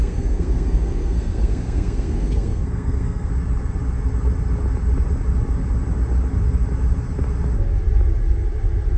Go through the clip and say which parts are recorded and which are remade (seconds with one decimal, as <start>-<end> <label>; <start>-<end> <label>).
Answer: 0.0-3.3 remade; 3.3-9.0 recorded